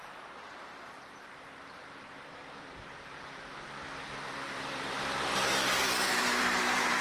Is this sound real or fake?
fake